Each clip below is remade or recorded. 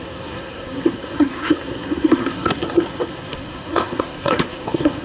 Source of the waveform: remade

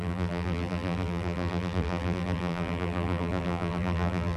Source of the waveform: remade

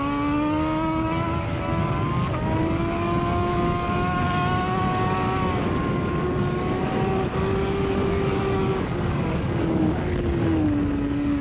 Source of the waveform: remade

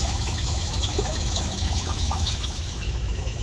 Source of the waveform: remade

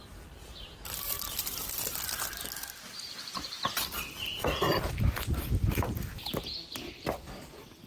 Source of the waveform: remade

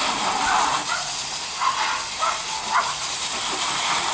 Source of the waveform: recorded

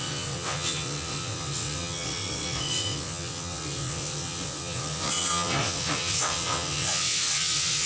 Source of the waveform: remade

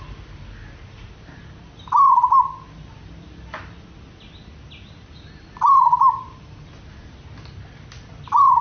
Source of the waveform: recorded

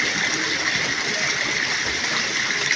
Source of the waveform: recorded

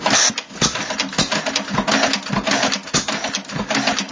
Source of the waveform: recorded